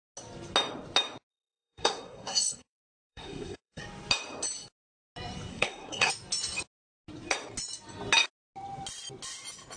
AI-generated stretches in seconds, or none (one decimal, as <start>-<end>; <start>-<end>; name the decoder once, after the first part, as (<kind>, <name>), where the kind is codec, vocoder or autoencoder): 1.3-3.8 (codec, SNAC); 5.5-6.1